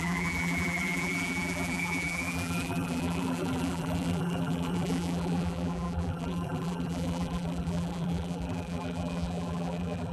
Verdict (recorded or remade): remade